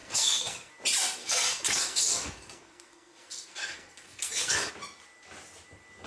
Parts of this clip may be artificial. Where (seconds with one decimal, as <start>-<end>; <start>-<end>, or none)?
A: 0.0-0.7; 1.2-4.7